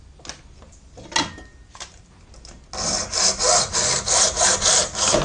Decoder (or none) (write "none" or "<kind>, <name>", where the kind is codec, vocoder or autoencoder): none